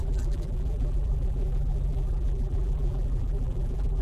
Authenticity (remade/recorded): remade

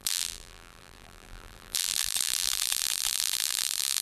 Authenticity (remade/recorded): remade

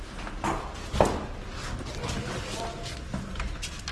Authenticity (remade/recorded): recorded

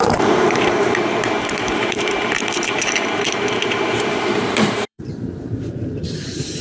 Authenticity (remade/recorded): remade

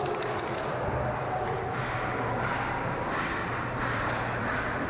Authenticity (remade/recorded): remade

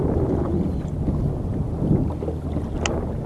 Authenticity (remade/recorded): recorded